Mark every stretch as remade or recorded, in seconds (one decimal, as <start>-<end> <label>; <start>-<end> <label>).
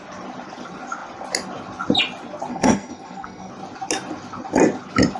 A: 0.0-2.5 recorded; 2.5-3.5 remade; 3.5-5.2 recorded